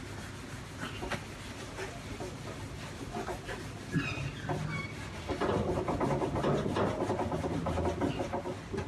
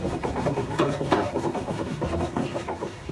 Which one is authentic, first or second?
first